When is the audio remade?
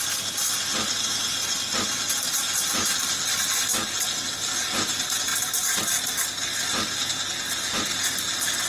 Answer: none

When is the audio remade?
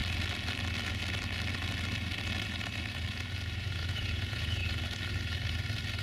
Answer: 3.6-4.6 (vocoder, Vocos)